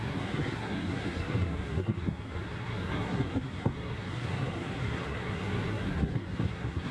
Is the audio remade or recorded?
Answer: remade